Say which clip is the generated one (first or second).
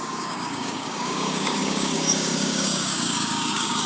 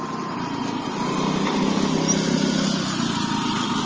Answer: first